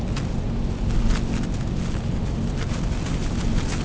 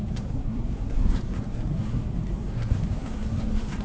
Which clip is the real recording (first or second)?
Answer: first